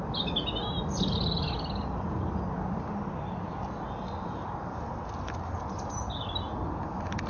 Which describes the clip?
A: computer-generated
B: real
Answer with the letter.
B